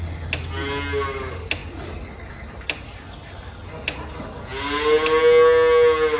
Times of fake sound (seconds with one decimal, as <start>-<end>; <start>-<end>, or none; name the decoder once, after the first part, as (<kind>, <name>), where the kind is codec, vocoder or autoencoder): none